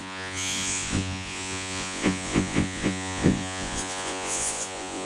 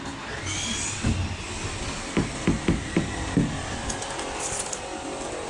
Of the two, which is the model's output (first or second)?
first